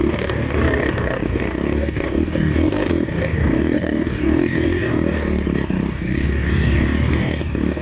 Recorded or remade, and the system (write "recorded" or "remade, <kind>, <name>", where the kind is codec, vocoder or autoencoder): remade, codec, DAC